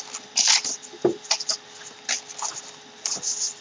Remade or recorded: recorded